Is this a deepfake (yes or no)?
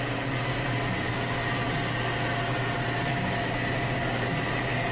no